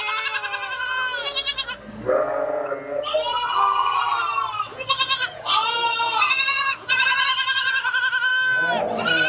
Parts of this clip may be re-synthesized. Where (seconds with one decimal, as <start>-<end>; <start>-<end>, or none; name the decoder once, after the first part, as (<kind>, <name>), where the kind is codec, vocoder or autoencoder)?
4.7-7.0 (vocoder, Vocos)